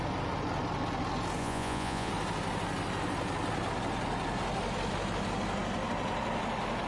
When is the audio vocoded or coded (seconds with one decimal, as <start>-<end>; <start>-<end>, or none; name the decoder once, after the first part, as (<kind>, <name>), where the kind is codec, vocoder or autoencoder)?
1.4-2.1 (vocoder, Vocos)